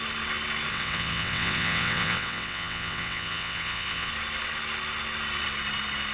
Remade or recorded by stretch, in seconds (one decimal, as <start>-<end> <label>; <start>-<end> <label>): 0.0-0.7 recorded; 0.7-4.1 remade; 4.1-6.1 recorded